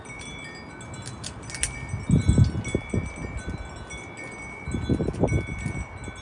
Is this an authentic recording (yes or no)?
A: yes